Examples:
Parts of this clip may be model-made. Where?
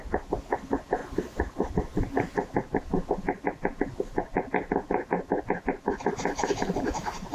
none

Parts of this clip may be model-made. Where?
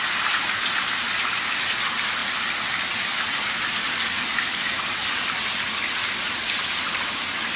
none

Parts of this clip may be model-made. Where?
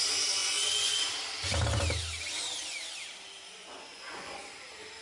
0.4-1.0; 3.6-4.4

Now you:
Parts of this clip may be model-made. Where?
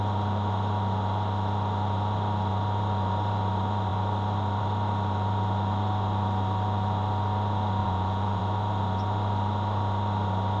7.8-8.4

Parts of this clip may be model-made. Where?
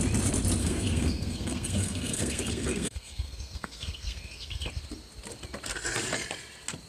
0.6-4.7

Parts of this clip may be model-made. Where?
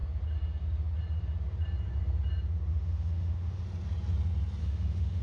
2.7-3.6; 4.6-5.2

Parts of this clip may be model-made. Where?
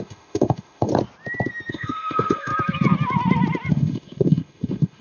0.0-0.9; 1.7-2.5; 3.7-5.0